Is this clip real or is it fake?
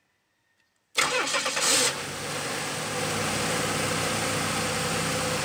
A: real